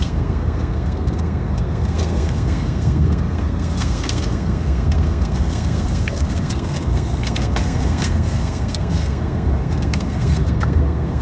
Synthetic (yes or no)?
yes